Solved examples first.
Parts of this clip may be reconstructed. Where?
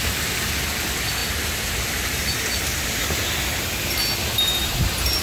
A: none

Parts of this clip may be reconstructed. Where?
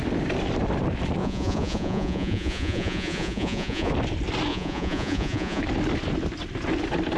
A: 1.2-3.9 (vocoder, Vocos); 4.5-5.6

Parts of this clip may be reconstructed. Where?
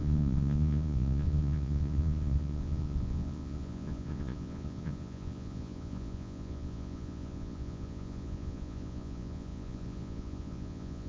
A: 0.0-11.1 (vocoder, Vocos)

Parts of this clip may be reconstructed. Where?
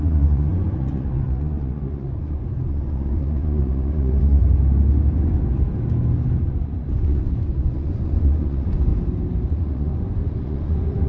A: 0.0-4.4 (vocoder, Vocos); 6.4-8.9; 9.5-11.1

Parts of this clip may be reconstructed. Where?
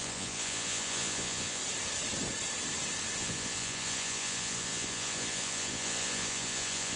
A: 0.0-1.6 (vocoder, Vocos); 3.2-7.0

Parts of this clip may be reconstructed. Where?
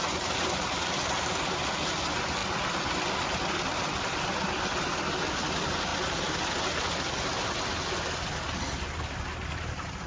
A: none